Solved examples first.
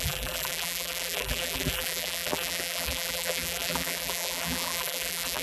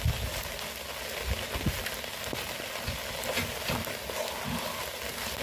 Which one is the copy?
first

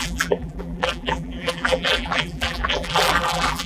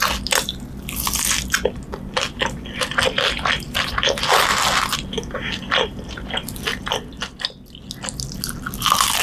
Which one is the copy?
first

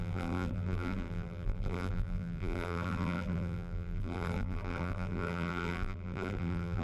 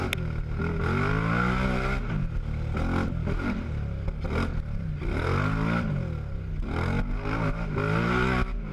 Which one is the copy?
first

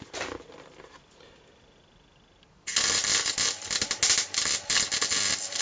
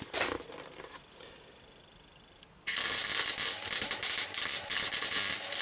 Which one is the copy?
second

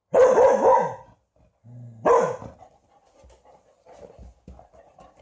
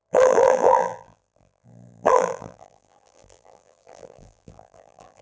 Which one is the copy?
second